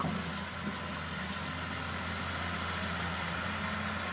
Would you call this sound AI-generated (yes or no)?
no